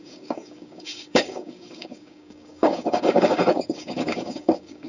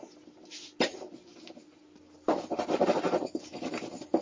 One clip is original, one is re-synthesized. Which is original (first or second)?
second